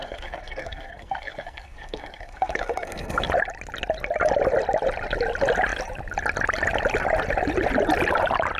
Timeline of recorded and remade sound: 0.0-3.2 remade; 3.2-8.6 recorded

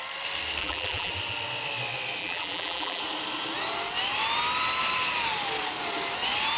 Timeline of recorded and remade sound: 0.0-0.6 recorded; 0.6-1.1 remade; 1.1-2.2 recorded; 2.2-3.0 remade; 3.0-6.6 recorded

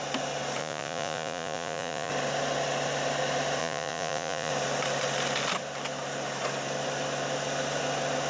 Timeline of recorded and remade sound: 0.0-0.6 recorded; 0.6-2.1 remade; 2.1-3.6 recorded; 3.6-4.5 remade; 4.5-8.3 recorded

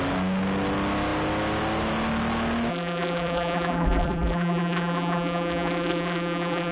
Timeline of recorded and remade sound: 0.0-2.7 recorded; 2.7-6.7 remade

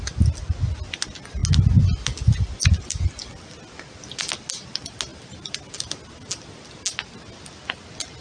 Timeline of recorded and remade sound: 0.0-8.2 recorded

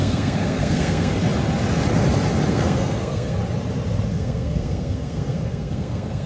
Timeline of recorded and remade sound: 0.0-1.2 remade; 1.2-2.5 recorded; 2.5-3.4 remade; 3.4-4.1 recorded; 4.1-6.3 remade

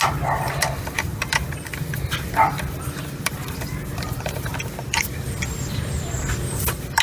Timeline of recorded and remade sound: 0.0-7.0 remade